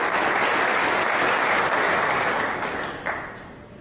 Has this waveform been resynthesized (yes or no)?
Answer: no